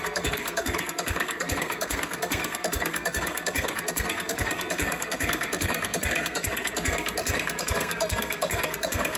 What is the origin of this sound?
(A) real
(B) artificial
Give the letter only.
B